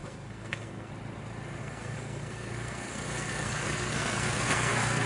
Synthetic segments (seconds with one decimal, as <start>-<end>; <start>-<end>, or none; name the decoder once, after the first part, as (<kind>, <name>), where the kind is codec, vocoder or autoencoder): 0.0-0.9 (codec, SNAC); 1.6-5.1